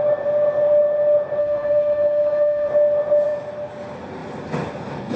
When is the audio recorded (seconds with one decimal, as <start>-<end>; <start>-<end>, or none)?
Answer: 0.0-1.4; 2.7-5.2